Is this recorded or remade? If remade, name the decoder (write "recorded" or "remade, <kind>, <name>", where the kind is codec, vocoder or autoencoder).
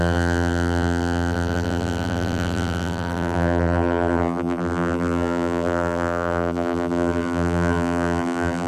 remade, vocoder, BigVGAN v2